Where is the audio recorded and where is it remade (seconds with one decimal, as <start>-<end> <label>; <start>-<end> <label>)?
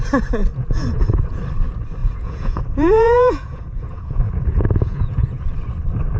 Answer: 0.0-0.4 recorded; 0.4-1.4 remade; 1.4-2.0 recorded; 2.0-5.5 remade; 5.5-6.2 recorded